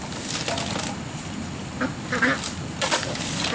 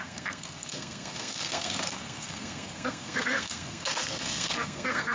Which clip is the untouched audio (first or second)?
first